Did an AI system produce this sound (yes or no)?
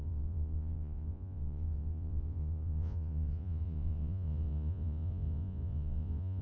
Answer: yes